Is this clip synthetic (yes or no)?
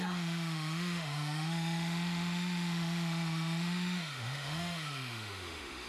yes